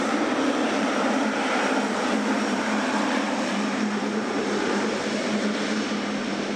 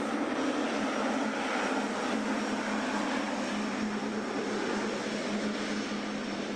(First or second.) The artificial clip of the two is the first